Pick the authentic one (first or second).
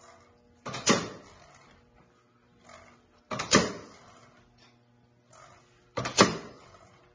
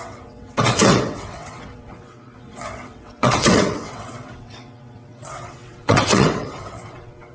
first